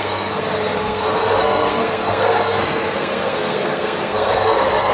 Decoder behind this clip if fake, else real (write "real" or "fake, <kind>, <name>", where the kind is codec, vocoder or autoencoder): fake, codec, SNAC